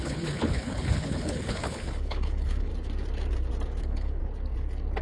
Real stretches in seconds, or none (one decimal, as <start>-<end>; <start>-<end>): 2.7-3.8; 4.2-5.0